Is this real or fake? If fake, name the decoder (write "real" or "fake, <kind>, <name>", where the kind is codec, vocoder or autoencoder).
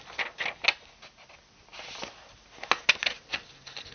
real